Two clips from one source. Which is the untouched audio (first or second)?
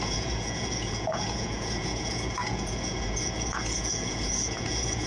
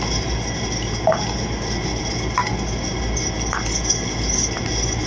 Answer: second